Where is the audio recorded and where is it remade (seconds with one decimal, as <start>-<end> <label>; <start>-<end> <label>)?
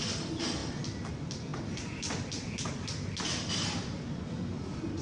0.0-5.0 recorded